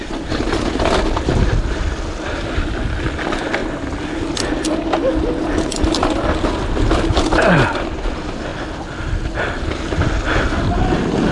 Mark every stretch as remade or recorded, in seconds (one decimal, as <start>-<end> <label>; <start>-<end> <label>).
0.0-11.3 recorded